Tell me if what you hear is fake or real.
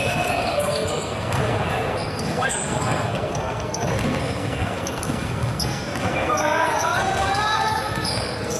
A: fake